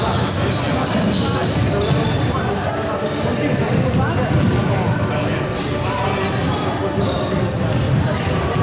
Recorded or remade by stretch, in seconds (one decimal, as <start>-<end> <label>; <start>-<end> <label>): 0.0-8.6 recorded